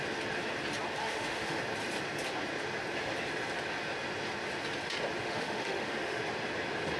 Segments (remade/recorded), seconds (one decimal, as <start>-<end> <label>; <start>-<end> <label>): 0.0-1.0 recorded; 1.0-1.6 remade; 1.6-5.2 recorded; 5.2-6.2 remade; 6.2-7.0 recorded